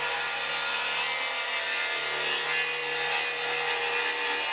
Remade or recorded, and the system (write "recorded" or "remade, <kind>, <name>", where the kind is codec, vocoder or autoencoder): recorded